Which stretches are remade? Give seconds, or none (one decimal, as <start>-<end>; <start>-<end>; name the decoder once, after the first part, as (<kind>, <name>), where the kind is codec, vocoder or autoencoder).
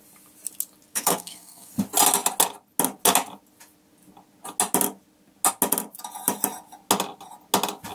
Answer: 0.9-1.7 (codec, SNAC)